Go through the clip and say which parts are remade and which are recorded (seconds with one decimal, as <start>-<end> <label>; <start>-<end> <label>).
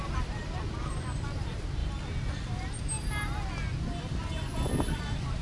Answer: 0.0-5.4 recorded